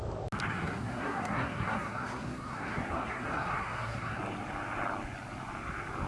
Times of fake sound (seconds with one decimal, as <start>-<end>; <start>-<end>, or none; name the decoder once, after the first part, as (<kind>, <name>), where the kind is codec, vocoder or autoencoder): 0.5-4.2 (codec, SNAC)